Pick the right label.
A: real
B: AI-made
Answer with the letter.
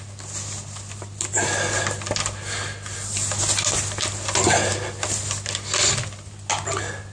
A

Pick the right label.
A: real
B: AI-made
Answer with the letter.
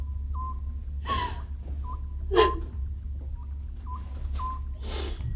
A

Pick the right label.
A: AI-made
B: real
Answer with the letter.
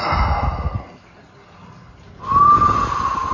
B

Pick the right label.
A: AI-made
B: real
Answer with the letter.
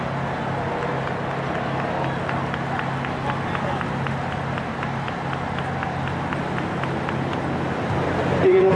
B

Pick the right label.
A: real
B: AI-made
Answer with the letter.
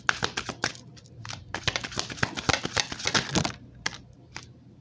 A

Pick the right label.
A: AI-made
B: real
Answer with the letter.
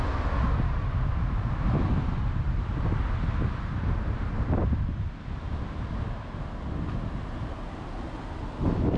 B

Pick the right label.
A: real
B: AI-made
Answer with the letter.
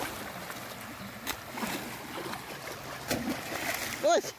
A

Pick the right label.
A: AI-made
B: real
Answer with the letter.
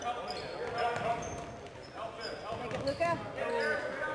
B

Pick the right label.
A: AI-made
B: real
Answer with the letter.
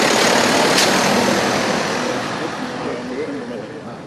B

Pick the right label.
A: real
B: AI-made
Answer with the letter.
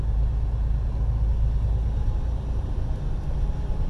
A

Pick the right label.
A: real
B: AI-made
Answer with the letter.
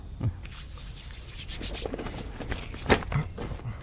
A